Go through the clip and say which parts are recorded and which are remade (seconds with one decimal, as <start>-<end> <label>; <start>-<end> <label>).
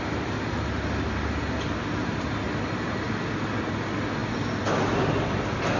0.0-5.8 recorded